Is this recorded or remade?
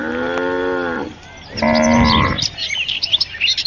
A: recorded